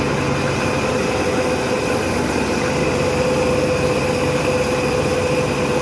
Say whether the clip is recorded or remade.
recorded